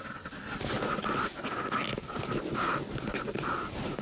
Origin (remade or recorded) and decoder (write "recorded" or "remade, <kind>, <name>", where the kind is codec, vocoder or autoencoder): recorded